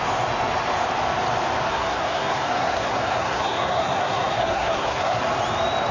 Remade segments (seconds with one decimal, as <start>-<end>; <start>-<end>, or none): 1.7-5.2